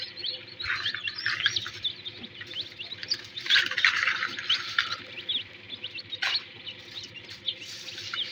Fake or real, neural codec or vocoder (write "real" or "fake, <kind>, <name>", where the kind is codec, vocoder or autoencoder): real